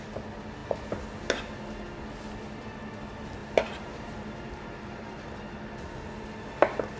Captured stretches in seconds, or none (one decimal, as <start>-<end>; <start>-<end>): 0.0-3.4; 5.4-7.0